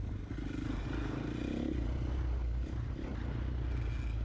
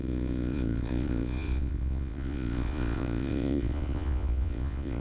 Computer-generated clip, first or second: second